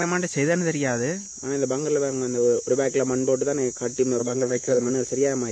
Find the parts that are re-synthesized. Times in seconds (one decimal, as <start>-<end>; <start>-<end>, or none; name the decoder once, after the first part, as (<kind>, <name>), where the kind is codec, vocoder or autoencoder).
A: 4.2-4.9 (codec, SNAC)